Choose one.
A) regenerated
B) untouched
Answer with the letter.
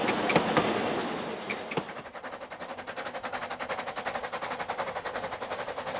B